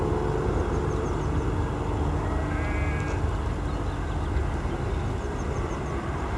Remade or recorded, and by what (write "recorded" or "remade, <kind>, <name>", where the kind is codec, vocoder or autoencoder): recorded